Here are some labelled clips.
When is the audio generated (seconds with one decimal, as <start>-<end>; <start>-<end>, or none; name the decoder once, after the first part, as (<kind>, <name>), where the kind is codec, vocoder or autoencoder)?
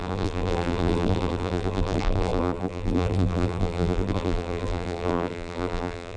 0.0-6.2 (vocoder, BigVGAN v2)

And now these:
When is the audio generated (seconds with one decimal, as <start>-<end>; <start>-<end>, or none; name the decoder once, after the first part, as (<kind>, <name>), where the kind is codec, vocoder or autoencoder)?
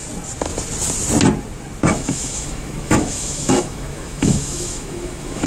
1.9-5.5 (autoencoder, DAC-VAE)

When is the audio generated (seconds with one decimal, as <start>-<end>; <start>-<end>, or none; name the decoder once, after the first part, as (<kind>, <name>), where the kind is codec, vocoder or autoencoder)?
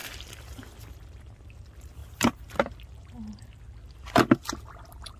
none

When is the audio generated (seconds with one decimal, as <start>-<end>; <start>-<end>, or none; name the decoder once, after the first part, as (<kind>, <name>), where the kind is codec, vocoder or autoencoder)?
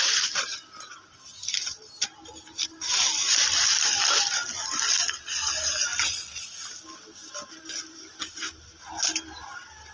none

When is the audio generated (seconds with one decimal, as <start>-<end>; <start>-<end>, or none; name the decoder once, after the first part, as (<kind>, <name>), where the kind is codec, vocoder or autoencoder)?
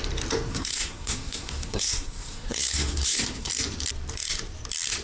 0.5-3.5 (codec, SNAC)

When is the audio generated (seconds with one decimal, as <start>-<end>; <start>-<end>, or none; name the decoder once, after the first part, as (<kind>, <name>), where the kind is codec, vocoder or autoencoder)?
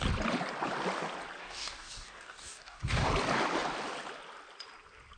1.4-3.1 (codec, DAC)